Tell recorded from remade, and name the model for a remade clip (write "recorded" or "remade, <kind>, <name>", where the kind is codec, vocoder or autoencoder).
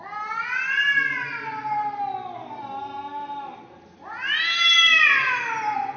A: recorded